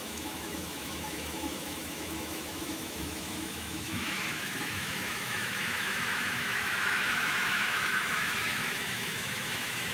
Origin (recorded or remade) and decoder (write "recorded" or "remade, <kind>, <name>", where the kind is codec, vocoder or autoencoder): remade, autoencoder, DAC-VAE